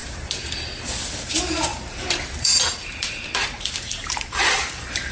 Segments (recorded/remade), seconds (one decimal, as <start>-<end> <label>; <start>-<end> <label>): 0.0-0.7 remade; 0.7-1.7 recorded; 1.7-5.1 remade